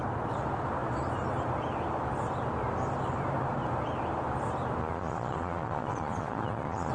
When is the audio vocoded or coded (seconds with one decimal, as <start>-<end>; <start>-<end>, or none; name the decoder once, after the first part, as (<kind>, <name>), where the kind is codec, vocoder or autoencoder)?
4.8-6.9 (vocoder, Vocos)